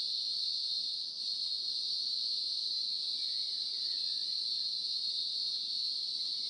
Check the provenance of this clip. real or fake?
real